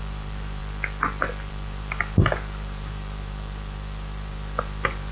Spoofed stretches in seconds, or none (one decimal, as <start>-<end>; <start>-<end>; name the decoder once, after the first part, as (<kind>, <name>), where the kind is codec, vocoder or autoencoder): 0.0-0.6 (vocoder, BigVGAN v2); 1.5-5.1